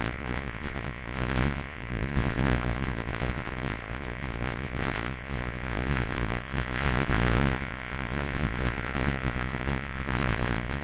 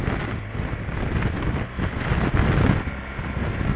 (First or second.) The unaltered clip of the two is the second